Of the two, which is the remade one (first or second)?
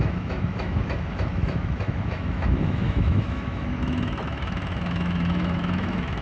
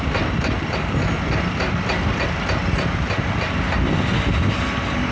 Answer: first